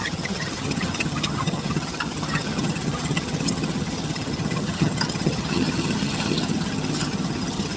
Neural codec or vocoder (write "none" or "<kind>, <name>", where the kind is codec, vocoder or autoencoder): vocoder, HiFi-GAN